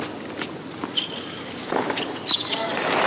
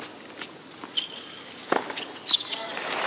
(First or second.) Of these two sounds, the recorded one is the second